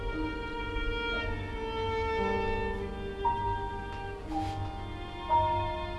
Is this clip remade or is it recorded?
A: recorded